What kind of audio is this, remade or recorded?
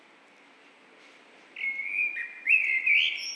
recorded